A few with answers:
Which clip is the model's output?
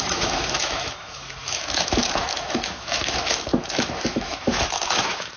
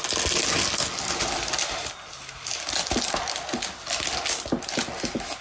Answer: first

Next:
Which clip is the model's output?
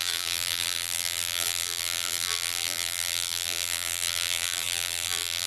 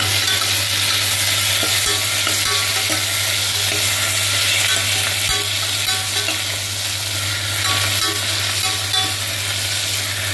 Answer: first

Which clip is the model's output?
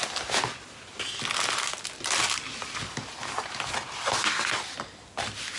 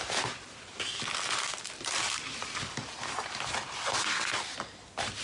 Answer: second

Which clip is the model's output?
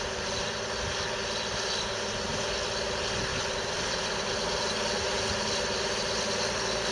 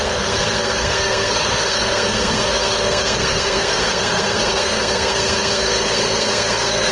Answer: second